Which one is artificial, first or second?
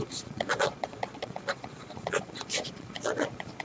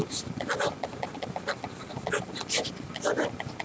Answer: first